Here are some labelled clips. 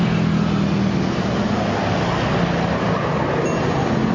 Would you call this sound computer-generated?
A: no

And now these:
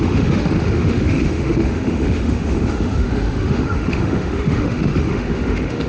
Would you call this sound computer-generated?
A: yes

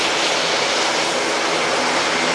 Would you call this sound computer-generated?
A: no